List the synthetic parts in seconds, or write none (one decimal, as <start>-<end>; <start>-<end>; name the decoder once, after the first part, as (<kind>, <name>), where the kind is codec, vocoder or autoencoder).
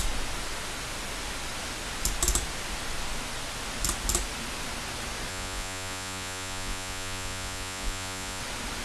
5.3-8.4 (vocoder, Vocos)